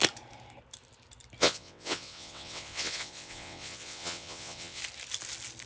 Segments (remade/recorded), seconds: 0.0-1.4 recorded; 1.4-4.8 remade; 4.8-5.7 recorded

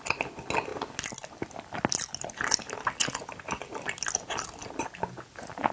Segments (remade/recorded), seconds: 0.0-5.7 recorded

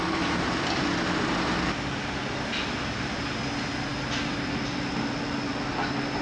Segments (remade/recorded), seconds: 0.0-6.2 recorded

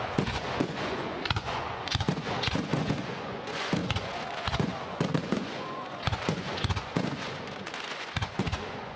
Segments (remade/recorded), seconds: 0.0-9.0 remade

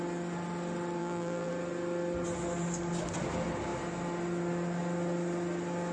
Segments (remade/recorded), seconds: 0.0-1.0 recorded; 1.0-1.5 remade; 1.5-5.9 recorded

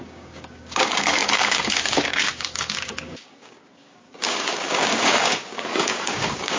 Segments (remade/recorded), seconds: 0.0-6.6 remade